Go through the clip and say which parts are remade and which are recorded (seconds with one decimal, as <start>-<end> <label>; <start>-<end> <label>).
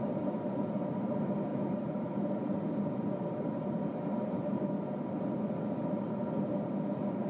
0.0-7.3 recorded